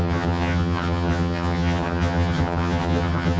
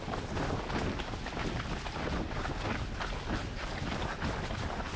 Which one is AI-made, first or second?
first